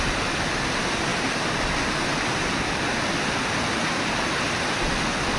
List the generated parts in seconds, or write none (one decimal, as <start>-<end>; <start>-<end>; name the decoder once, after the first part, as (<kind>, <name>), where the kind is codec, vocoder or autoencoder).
none